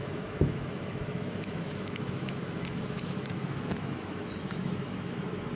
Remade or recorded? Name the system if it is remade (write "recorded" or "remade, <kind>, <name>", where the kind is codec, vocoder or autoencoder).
remade, autoencoder, DAC-VAE